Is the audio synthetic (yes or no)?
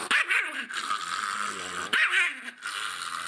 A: no